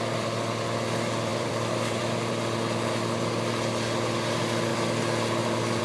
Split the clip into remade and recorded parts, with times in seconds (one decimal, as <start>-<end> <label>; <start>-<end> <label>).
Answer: 0.0-1.3 recorded; 1.3-2.3 remade; 2.3-5.8 recorded